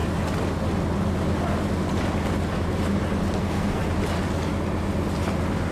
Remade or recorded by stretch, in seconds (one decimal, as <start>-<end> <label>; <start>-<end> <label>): 0.0-3.4 recorded; 3.4-3.8 remade; 3.8-5.7 recorded